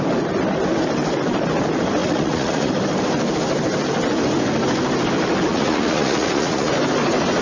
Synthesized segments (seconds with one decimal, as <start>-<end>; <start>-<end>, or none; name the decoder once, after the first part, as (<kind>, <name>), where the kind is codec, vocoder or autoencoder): 2.0-2.7 (vocoder, Vocos); 5.5-6.7